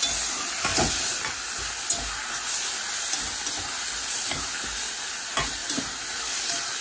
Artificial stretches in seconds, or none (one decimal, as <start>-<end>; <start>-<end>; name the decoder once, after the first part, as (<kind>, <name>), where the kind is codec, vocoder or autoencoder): none